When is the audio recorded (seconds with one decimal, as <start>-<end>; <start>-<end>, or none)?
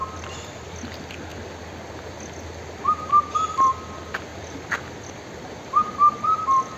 0.7-4.3; 5.1-6.8